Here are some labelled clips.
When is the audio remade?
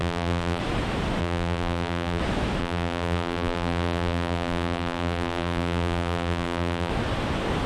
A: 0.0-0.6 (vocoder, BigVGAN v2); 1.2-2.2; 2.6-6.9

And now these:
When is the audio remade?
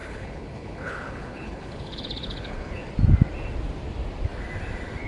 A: 0.0-2.9 (codec, HILCodec)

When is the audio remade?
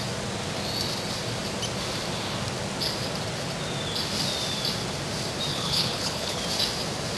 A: 5.5-6.4 (codec, HILCodec)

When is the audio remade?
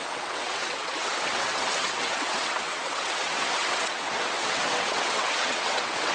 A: 0.0-6.1 (vocoder, WaveNeXt)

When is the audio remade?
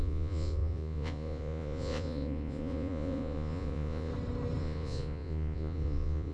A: 0.0-4.1 (vocoder, Vocos); 4.6-6.3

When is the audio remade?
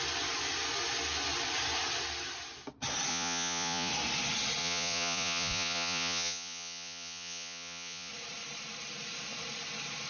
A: 3.1-3.9 (vocoder, Vocos); 4.6-8.1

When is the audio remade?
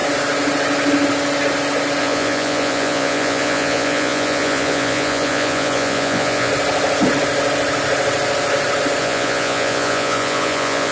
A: 2.0-6.5 (vocoder, Vocos); 9.0-10.9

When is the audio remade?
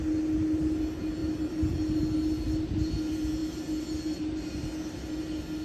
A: none